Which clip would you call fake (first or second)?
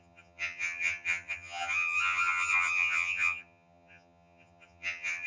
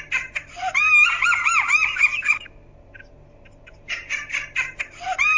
first